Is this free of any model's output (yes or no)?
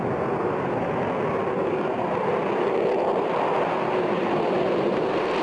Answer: yes